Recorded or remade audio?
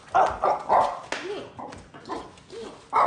recorded